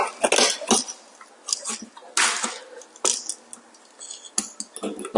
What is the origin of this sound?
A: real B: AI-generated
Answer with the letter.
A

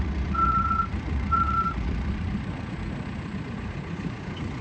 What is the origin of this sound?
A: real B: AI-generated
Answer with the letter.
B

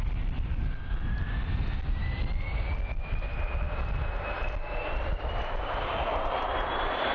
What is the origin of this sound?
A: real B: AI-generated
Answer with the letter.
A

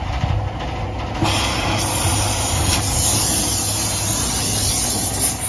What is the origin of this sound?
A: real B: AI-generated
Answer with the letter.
A